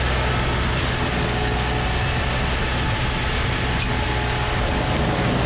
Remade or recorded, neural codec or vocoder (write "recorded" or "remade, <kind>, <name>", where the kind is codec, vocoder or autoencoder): recorded